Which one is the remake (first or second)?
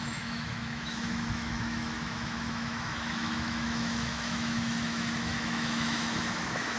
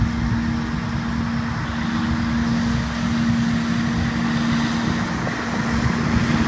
first